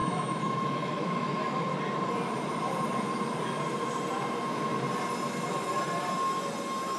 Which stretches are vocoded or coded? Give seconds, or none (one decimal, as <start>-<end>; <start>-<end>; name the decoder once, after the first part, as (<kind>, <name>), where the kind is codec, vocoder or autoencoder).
0.0-1.3 (autoencoder, DAC-VAE)